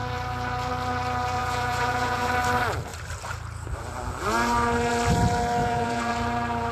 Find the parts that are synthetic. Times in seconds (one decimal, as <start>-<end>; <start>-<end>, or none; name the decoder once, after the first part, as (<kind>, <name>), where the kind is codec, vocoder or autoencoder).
1.4-2.3 (vocoder, Vocos); 5.6-6.1